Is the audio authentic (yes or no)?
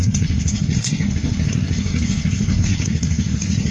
no